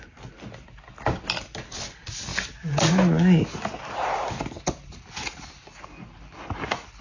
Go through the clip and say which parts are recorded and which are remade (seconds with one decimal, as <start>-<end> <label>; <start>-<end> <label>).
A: 0.0-7.0 recorded